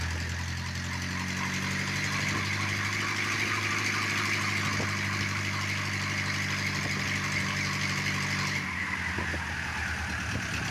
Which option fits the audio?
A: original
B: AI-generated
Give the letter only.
A